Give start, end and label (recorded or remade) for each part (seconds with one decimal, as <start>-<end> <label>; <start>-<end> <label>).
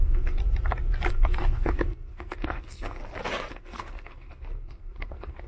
0.0-0.4 remade; 0.4-1.1 recorded; 1.1-3.0 remade; 3.0-3.5 recorded; 3.5-5.5 remade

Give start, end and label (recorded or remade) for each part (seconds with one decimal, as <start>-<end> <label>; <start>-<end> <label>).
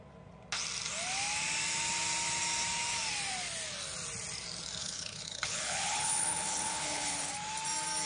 0.0-4.8 recorded; 4.8-7.3 remade; 7.3-8.1 recorded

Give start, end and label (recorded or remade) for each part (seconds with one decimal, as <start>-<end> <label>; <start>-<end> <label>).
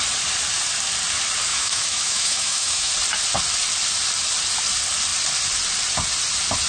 0.0-1.5 recorded; 1.5-2.9 remade; 2.9-6.7 recorded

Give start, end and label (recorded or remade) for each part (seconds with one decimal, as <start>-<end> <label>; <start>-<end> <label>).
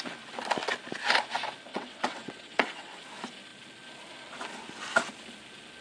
0.0-1.7 recorded; 1.7-3.0 remade; 3.0-5.8 recorded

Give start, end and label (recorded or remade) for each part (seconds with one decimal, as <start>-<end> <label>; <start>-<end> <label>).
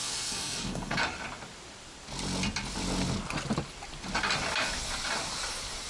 0.0-1.0 remade; 1.0-5.9 recorded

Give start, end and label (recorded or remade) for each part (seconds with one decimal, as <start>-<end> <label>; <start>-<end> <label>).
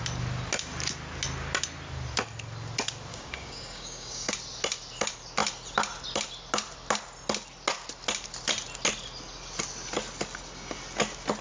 0.0-3.1 recorded; 3.1-4.3 remade; 4.3-11.4 recorded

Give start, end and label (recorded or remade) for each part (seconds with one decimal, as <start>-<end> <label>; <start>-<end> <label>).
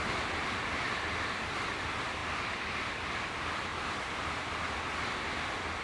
0.0-2.2 recorded; 2.2-3.2 remade; 3.2-3.7 recorded; 3.7-4.4 remade; 4.4-5.8 recorded